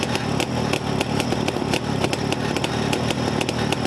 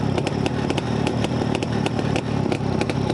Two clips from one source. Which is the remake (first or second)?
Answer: second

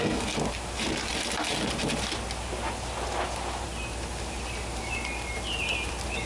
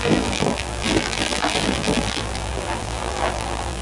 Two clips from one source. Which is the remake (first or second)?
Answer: second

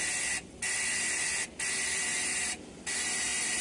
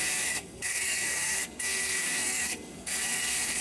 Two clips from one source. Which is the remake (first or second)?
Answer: second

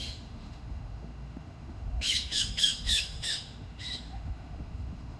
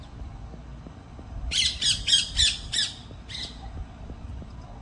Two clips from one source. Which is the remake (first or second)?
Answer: first